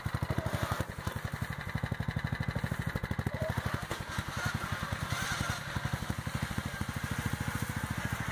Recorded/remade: recorded